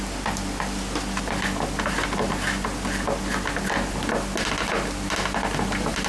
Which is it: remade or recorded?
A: recorded